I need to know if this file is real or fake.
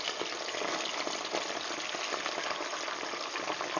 real